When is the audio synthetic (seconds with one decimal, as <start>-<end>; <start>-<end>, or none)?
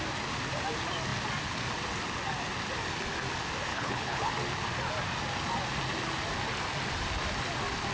3.7-4.3